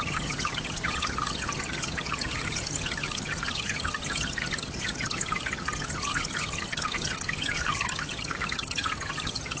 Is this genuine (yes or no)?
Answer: no